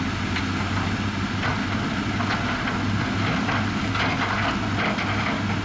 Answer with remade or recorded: recorded